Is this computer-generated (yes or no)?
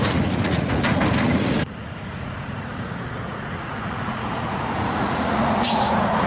yes